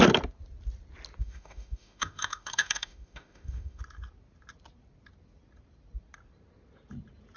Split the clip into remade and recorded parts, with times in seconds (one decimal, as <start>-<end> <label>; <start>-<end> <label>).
0.0-1.2 recorded; 1.2-3.8 remade; 3.8-7.4 recorded